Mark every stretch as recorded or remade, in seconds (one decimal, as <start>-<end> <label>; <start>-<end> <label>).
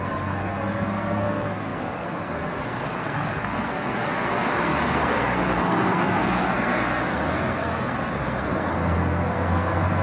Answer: 0.0-10.0 remade